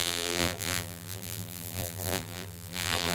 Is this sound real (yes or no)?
no